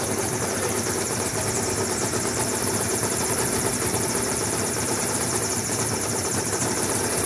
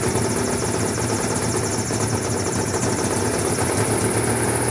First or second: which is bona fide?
second